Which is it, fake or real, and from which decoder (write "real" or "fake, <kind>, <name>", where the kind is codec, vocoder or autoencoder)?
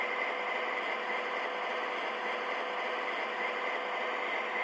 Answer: real